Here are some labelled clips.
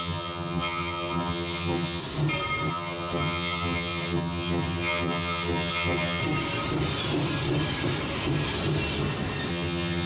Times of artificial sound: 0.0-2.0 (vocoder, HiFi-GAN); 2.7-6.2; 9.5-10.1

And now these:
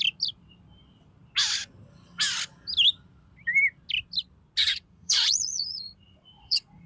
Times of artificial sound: 4.6-6.9 (vocoder, Vocos)

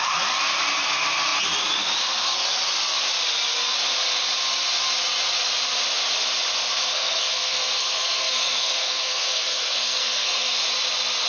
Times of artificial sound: 6.8-10.6 (codec, SNAC)